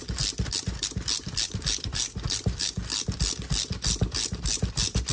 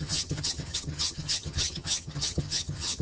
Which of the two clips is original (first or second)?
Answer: first